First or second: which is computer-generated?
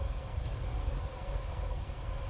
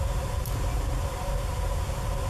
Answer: first